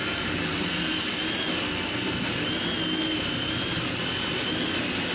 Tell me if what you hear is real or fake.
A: real